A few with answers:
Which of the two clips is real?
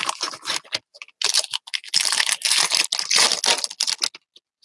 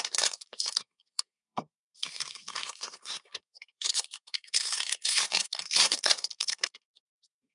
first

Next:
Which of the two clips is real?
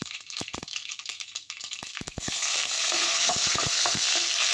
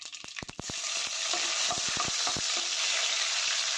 second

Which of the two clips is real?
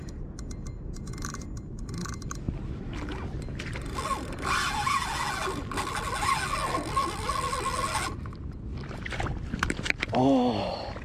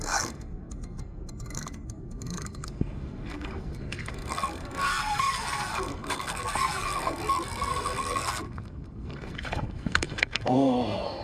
first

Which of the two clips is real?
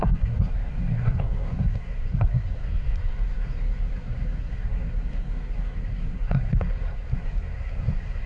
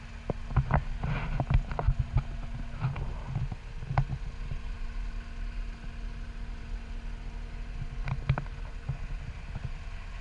second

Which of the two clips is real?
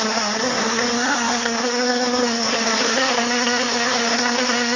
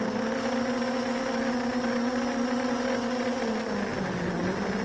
second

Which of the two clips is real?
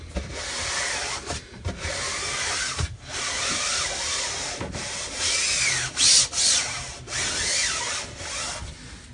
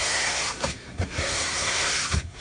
first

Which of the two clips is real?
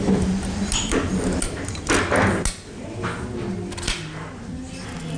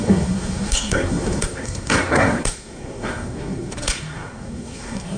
first